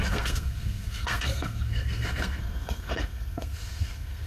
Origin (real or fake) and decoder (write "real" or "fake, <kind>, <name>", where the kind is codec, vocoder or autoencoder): fake, codec, SNAC